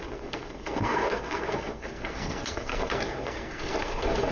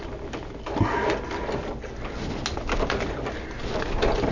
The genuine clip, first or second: second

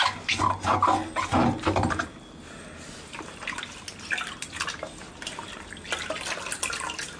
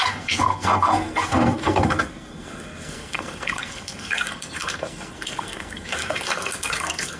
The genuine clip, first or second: first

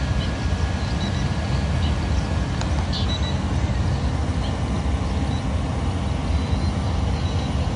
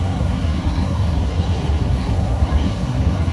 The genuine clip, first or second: first